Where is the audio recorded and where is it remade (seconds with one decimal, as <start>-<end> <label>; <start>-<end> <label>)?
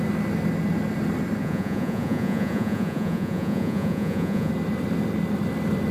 0.0-1.4 recorded; 1.4-4.5 remade; 4.5-5.9 recorded